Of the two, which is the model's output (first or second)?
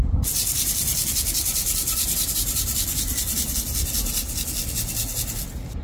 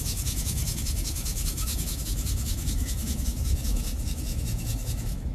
second